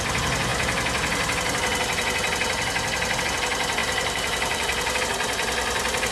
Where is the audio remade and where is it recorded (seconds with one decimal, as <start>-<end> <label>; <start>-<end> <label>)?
0.0-3.8 recorded; 3.8-5.0 remade; 5.0-6.1 recorded